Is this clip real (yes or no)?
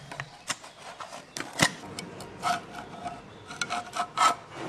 yes